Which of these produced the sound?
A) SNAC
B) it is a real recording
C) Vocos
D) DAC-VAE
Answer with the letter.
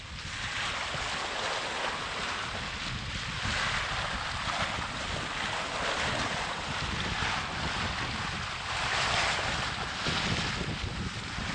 B